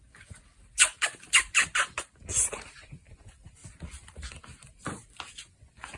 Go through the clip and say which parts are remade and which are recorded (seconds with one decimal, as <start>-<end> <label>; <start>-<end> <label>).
0.0-0.5 remade; 0.5-2.7 recorded; 2.7-3.6 remade; 3.6-5.3 recorded; 5.3-6.0 remade